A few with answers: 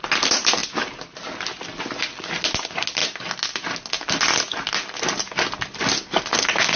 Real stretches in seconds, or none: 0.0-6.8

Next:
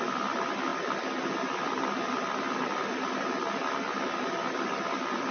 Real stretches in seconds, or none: 0.0-5.3